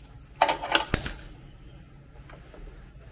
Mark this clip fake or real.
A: real